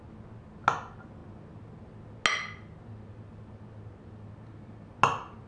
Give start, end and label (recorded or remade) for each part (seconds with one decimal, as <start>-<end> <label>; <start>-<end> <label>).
0.0-5.5 recorded